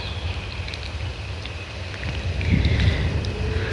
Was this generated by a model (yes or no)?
no